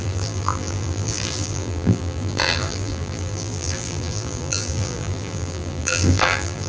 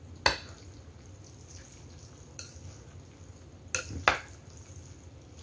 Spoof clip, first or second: first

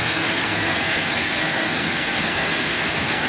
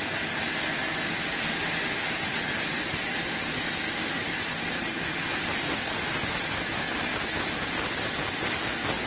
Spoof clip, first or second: first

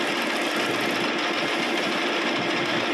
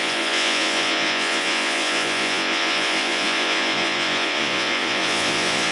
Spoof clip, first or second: second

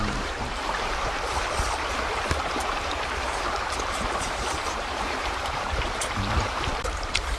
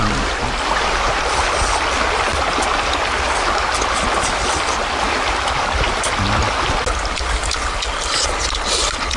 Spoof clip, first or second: first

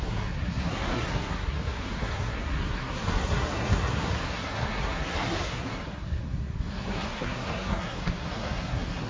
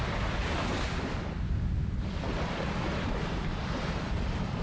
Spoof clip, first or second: first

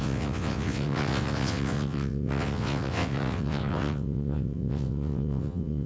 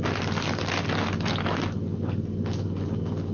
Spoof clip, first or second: first